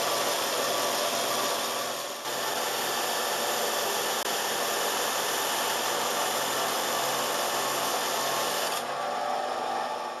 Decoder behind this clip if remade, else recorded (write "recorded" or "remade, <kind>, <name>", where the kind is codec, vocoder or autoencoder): recorded